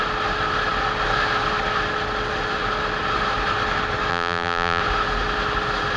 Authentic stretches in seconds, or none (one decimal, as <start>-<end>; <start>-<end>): 0.0-4.1; 4.8-6.0